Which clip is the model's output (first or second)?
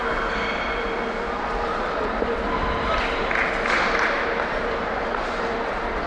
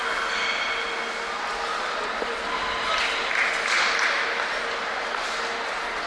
first